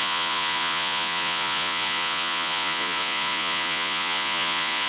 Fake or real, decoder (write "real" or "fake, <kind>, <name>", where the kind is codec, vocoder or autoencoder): fake, vocoder, Vocos